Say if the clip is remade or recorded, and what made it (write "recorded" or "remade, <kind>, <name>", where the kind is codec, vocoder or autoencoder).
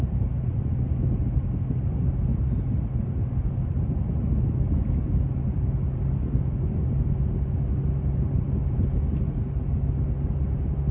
recorded